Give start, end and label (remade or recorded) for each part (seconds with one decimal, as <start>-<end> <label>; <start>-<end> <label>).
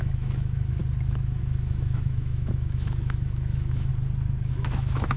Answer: 0.0-0.8 remade; 0.8-1.4 recorded; 1.4-3.9 remade; 3.9-4.5 recorded; 4.5-5.2 remade